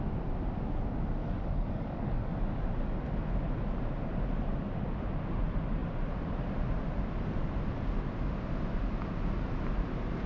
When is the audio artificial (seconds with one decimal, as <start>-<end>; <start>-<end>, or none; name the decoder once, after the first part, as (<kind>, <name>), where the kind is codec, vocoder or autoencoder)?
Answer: 1.2-2.3 (codec, DAC)